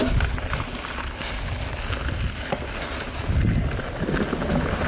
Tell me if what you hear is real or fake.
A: real